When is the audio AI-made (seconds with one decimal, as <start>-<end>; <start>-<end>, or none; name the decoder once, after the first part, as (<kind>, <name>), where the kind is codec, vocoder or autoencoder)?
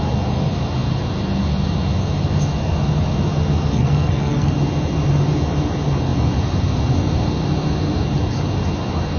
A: 3.7-4.5 (codec, SNAC)